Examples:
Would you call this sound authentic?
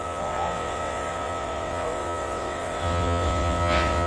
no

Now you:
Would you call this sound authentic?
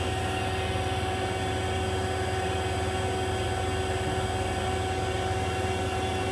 yes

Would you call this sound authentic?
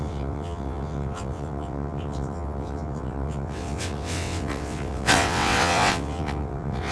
no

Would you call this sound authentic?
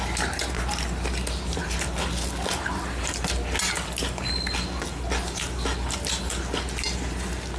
yes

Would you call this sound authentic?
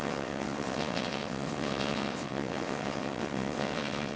no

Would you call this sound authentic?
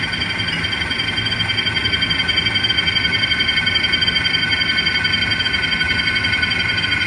yes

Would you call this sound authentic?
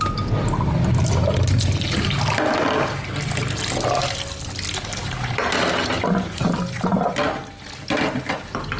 yes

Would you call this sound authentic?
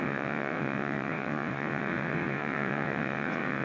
no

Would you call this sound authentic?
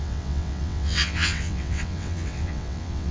no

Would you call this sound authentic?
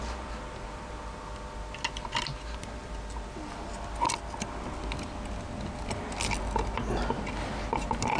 yes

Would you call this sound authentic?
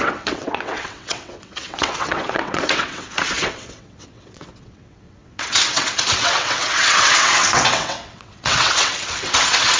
no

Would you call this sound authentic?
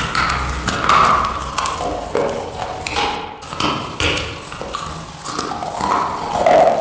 yes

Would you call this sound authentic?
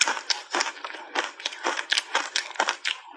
yes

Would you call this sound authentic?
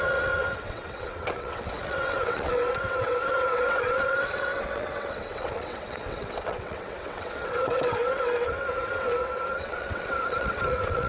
no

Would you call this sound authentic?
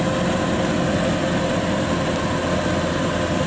yes